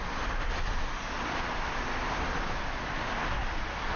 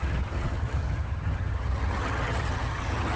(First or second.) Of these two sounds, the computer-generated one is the second